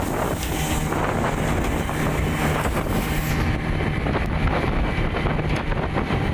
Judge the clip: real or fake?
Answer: real